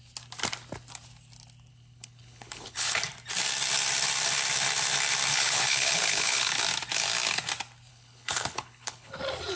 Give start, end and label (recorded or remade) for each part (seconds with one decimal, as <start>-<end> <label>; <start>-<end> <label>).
0.0-1.7 recorded; 1.7-3.0 remade; 3.0-5.3 recorded; 5.3-6.6 remade; 6.6-7.9 recorded; 7.9-9.2 remade; 9.2-9.6 recorded